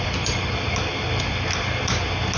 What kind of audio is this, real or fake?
real